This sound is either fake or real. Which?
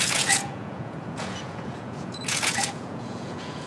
fake